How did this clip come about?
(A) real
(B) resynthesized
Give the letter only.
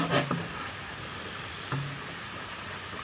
A